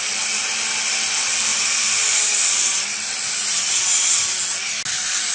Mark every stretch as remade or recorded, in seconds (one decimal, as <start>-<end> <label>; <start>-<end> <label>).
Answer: 0.0-1.5 recorded; 1.5-3.7 remade; 3.7-5.3 recorded